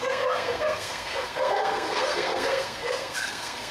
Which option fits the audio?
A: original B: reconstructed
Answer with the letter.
B